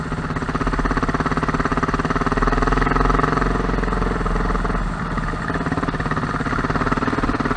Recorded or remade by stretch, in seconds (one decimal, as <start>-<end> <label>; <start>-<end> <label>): 0.0-7.6 recorded